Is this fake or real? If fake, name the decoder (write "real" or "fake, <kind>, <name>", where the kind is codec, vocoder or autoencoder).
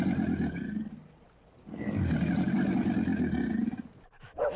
real